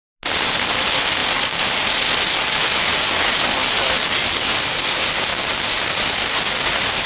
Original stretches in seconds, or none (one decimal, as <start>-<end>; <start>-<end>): 0.0-7.1